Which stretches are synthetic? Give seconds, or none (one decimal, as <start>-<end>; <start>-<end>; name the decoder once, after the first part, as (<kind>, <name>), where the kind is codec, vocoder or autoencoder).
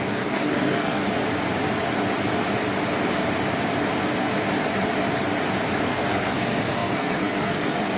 0.0-1.0 (codec, SNAC); 5.8-8.0